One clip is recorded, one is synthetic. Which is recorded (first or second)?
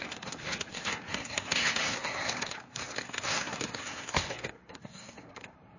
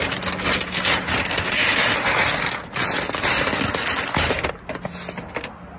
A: second